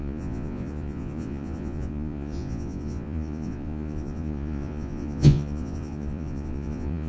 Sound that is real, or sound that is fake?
fake